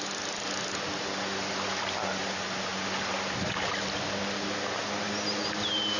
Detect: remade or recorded recorded